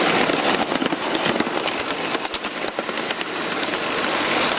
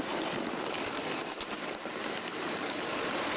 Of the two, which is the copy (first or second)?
second